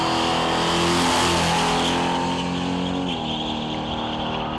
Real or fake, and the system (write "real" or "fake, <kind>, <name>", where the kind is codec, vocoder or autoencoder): real